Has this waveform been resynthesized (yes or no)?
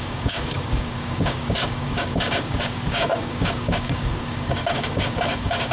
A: yes